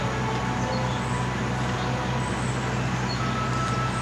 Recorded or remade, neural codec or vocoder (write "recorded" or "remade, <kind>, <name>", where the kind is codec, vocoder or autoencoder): recorded